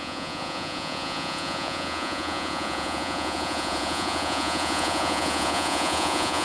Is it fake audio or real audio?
fake